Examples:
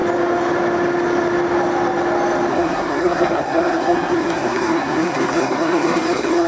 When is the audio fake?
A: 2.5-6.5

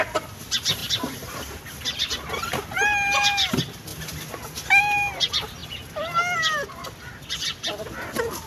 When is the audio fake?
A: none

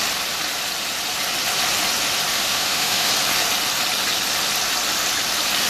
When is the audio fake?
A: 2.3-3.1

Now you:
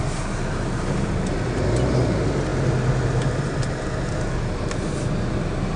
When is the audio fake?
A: none

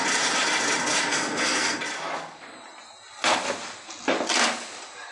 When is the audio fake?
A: 1.1-1.8